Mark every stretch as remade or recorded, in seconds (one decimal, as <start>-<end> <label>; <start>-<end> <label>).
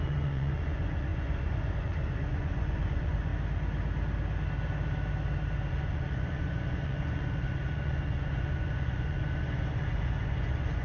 0.0-3.3 remade; 3.3-5.7 recorded; 5.7-10.8 remade